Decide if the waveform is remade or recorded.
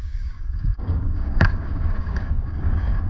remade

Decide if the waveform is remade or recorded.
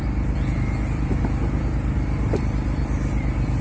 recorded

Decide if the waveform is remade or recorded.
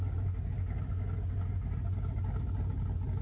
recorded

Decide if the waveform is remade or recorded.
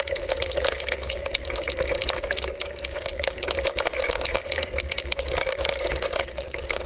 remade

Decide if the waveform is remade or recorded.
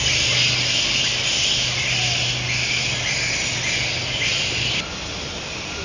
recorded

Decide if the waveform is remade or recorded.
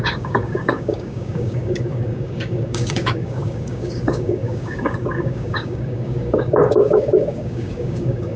remade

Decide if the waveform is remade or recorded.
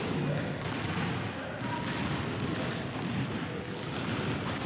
recorded